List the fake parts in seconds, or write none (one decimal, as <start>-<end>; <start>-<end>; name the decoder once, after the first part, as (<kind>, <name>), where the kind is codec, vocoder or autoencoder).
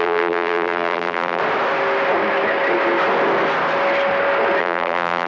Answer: 0.0-1.4 (vocoder, BigVGAN v2); 4.6-5.3